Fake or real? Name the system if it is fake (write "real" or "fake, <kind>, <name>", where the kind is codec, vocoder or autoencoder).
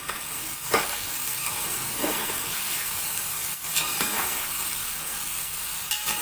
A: fake, codec, SNAC